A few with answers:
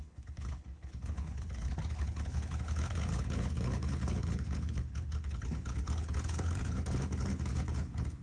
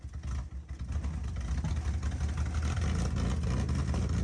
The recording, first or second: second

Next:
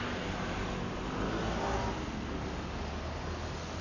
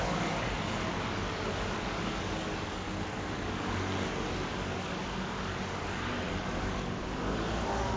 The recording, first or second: first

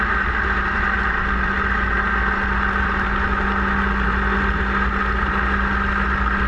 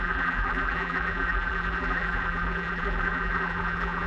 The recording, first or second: first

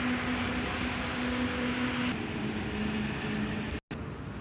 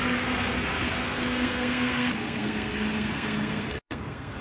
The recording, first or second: first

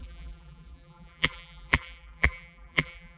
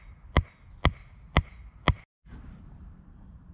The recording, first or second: second